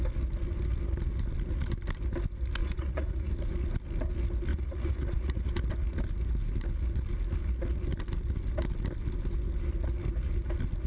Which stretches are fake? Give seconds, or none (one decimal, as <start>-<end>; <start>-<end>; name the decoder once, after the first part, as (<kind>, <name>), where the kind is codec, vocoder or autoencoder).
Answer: 2.6-3.3 (vocoder, Vocos); 4.5-5.5